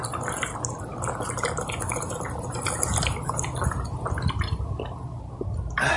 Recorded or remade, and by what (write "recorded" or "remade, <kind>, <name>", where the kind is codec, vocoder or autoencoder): recorded